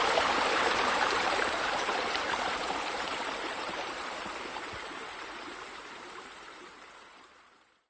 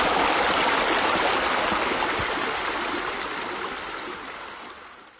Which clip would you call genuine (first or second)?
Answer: second